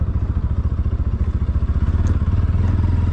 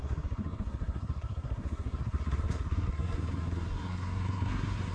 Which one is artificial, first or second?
second